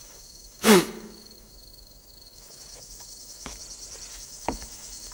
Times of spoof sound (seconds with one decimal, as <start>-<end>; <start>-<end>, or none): 0.0-3.6; 4.1-5.1